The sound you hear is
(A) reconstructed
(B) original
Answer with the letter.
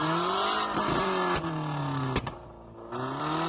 B